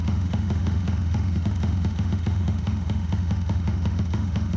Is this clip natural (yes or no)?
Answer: no